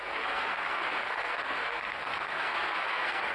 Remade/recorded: remade